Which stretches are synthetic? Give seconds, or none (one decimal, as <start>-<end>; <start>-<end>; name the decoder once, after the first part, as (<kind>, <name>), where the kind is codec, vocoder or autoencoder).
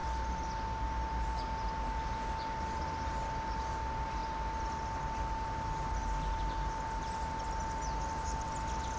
none